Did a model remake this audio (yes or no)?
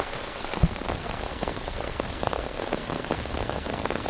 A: yes